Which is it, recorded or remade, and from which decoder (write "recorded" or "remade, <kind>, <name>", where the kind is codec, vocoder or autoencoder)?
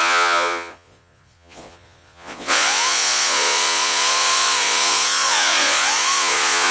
remade, vocoder, Vocos